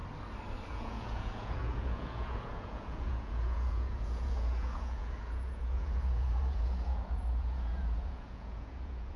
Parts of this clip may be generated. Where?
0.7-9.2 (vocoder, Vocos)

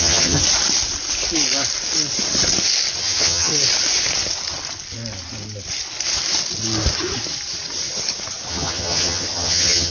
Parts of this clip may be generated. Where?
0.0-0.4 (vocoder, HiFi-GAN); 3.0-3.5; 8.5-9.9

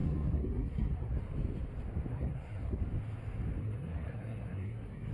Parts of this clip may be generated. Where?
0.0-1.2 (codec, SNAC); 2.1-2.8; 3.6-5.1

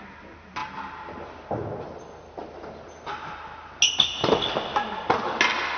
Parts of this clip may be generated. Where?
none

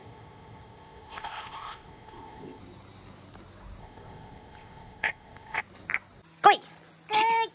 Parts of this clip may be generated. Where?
0.0-2.6 (codec, ZipCodec); 3.8-5.6